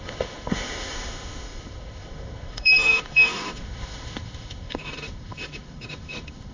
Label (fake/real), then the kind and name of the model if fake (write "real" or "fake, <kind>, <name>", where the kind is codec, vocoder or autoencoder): fake, autoencoder, DAC-VAE